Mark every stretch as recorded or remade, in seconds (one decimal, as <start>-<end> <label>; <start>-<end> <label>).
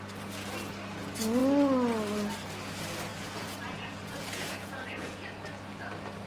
0.0-3.1 recorded; 3.1-5.2 remade; 5.2-6.3 recorded